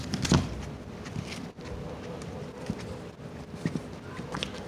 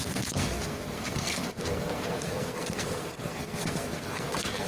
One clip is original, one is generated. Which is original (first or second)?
first